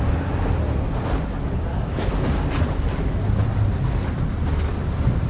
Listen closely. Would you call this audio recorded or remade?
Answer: recorded